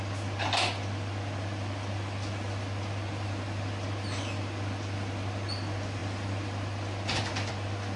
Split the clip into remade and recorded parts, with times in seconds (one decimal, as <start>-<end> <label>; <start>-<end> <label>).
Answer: 0.0-8.0 recorded